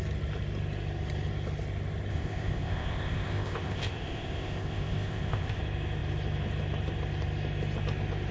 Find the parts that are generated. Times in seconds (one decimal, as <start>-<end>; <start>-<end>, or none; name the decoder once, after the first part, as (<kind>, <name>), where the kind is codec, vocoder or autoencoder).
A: 2.1-5.6 (codec, ZipCodec)